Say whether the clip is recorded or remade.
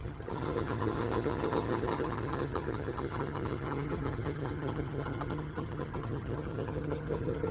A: remade